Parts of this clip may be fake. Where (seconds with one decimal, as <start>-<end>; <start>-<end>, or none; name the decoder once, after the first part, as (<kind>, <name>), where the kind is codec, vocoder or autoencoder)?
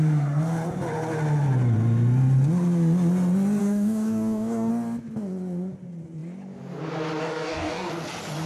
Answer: 3.6-4.7 (codec, DAC); 7.2-7.9